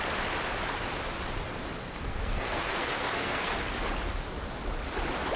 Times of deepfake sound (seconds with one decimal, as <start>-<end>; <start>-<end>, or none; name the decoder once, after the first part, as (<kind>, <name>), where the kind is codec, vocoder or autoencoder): 1.8-3.6 (codec, SNAC)